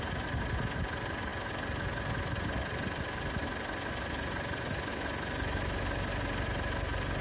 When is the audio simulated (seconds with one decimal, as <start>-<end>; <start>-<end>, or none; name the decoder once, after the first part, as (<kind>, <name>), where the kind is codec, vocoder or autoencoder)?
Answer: none